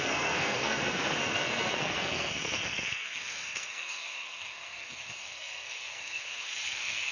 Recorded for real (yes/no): no